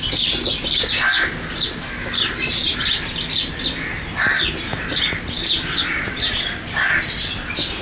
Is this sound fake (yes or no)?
no